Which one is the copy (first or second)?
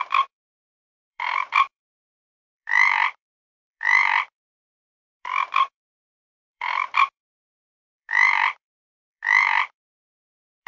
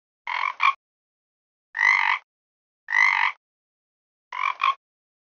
first